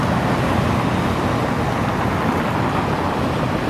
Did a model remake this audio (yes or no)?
no